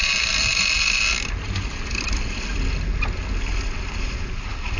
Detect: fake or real real